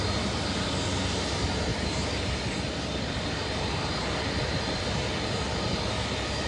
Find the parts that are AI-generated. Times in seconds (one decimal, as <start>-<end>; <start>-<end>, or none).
none